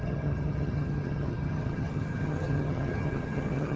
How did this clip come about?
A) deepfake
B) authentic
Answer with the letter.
A